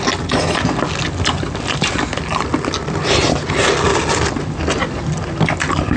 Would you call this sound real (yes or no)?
yes